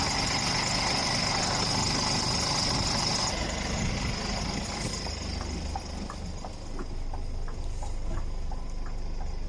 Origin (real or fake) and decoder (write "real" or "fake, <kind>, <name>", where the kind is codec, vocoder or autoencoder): real